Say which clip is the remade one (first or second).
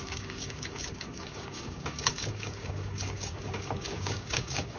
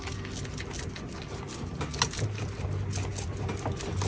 first